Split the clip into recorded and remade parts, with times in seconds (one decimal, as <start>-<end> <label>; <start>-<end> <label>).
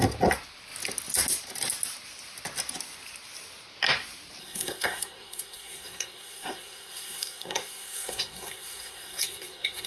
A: 0.0-4.4 recorded; 4.4-9.9 remade